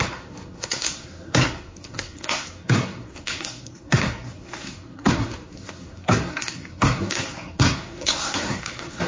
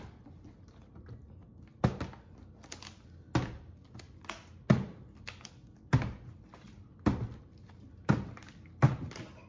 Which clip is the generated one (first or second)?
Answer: first